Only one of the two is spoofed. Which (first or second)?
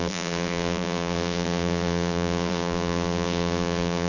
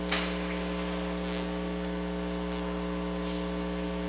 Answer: first